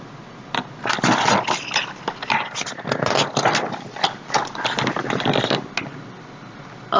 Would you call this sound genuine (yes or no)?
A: yes